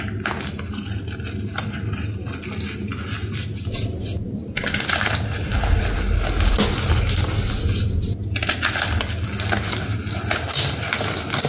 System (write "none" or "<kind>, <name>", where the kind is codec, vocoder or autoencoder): none